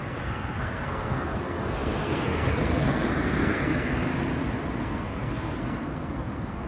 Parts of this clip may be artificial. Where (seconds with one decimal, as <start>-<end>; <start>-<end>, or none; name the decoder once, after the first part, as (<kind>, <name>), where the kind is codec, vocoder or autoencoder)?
0.0-4.1 (codec, SNAC); 4.8-6.7